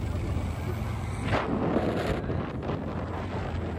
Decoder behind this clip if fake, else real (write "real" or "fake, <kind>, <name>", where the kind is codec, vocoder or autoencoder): real